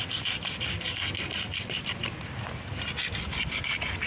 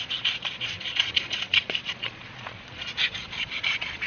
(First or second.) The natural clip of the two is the first